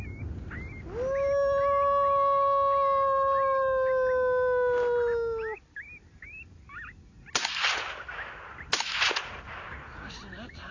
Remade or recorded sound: recorded